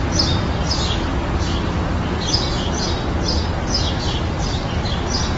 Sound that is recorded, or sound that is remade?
recorded